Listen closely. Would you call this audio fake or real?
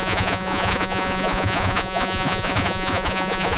fake